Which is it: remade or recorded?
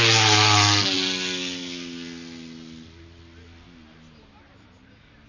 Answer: recorded